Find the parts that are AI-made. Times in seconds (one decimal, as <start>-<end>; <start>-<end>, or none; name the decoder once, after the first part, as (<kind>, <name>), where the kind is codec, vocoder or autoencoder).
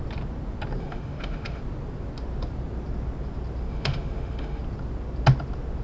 0.8-1.6 (autoencoder, DAC-VAE); 3.7-4.6